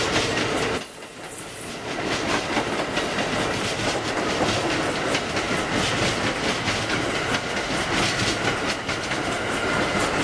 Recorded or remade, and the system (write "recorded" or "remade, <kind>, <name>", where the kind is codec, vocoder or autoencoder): recorded